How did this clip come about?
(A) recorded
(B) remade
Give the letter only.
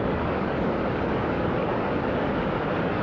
B